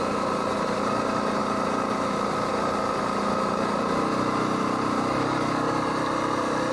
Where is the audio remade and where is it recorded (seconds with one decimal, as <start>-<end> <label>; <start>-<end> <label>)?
0.0-6.7 recorded